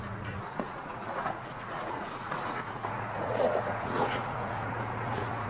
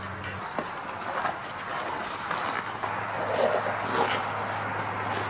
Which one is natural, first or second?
second